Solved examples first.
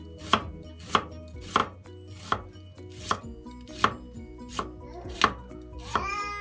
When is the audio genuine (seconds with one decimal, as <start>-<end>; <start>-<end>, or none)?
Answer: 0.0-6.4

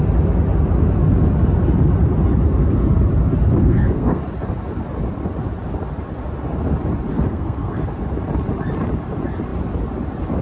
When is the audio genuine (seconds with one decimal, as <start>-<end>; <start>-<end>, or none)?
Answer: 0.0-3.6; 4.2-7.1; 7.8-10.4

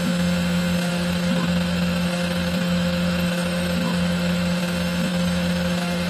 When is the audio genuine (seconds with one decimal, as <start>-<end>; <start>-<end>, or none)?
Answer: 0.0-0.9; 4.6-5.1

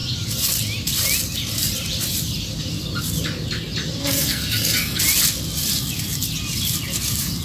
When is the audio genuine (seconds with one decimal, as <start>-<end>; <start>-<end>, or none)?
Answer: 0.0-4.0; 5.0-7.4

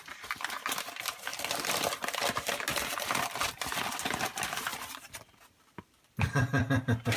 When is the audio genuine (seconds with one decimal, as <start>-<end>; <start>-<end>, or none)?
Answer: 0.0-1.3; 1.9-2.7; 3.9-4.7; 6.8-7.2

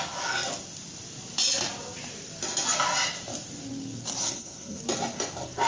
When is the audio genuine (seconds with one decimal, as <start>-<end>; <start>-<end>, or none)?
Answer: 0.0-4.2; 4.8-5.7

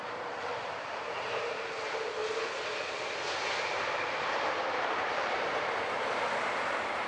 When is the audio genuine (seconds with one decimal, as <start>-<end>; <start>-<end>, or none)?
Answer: 2.2-3.7